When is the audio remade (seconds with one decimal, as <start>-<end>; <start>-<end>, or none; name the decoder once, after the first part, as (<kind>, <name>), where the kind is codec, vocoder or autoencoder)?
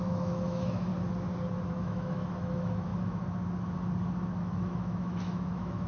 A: 0.0-0.9 (autoencoder, DAC-VAE); 1.7-2.9; 4.4-5.9